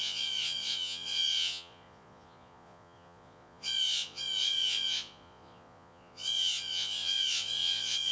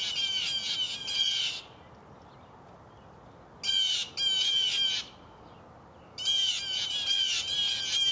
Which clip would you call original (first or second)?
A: second